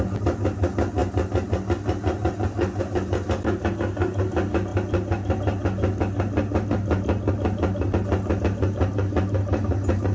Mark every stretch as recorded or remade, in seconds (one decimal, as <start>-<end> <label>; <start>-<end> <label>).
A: 0.0-10.1 recorded